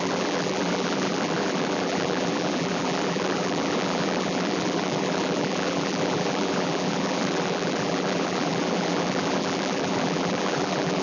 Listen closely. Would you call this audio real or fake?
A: fake